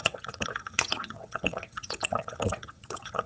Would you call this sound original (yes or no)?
no